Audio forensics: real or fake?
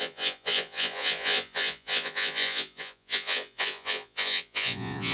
fake